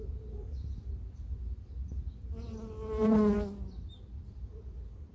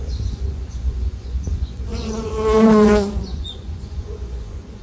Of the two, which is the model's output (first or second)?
second